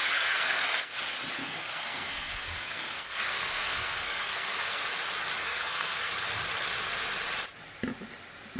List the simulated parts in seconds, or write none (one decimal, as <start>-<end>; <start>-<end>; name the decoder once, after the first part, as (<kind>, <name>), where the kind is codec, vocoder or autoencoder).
0.0-1.0 (codec, SNAC); 1.4-4.8; 5.4-6.1

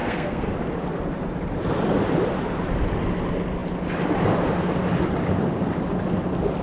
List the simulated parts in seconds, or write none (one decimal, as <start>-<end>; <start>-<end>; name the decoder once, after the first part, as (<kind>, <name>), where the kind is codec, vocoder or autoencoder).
0.0-0.5 (codec, SNAC)